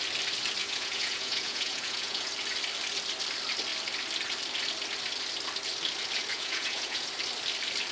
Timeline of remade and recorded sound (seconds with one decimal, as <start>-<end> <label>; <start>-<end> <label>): 0.0-0.6 recorded; 0.6-2.3 remade; 2.3-6.3 recorded; 6.3-7.1 remade; 7.1-7.9 recorded